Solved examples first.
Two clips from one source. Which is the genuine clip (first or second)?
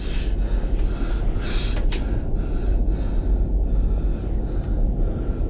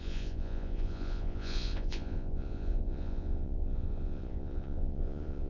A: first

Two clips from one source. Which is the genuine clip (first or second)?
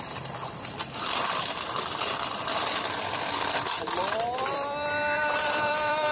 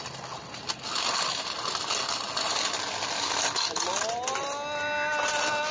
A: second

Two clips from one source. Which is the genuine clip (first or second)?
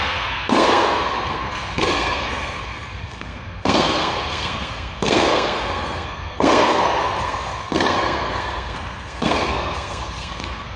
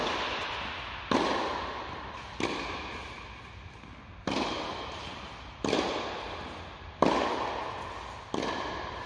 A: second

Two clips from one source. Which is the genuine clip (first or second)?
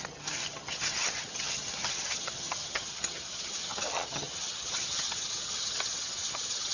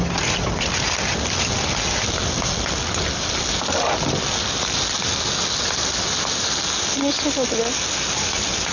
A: second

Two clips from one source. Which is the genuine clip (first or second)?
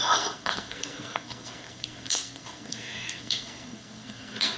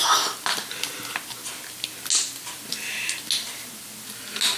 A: second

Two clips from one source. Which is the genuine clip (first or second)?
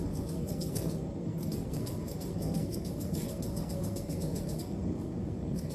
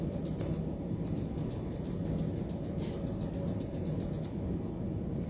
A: second